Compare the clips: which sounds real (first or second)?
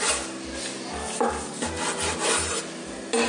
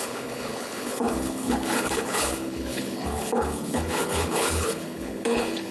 first